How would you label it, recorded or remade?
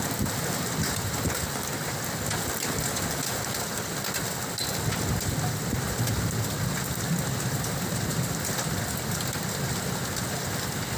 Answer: recorded